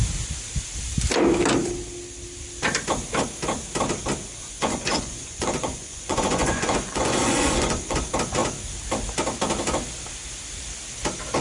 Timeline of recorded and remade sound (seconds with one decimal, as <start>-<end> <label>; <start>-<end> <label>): 0.0-4.4 recorded; 4.4-8.0 remade; 8.0-11.4 recorded